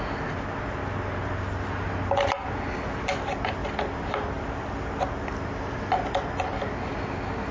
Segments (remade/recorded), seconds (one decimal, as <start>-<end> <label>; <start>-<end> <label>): 0.0-7.5 recorded